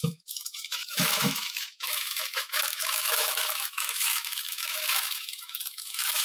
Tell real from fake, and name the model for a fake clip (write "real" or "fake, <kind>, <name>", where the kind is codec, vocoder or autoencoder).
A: fake, autoencoder, DAC-VAE